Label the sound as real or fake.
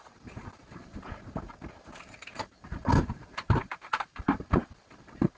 fake